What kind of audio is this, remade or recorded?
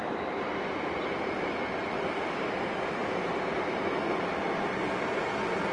recorded